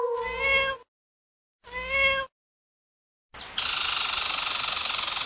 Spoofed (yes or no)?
no